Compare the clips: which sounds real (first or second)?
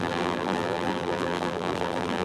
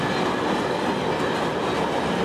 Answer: second